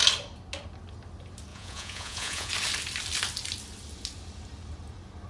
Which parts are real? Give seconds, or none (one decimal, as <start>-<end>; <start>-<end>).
0.0-1.5; 2.5-5.3